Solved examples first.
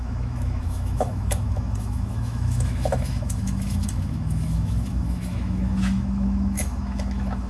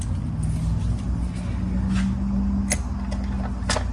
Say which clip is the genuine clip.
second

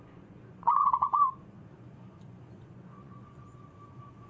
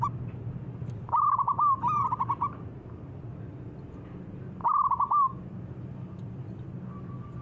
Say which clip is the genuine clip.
second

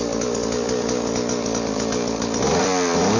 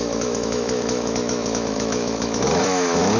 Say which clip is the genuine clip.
first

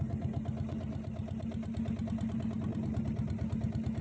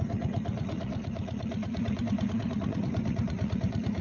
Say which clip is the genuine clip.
first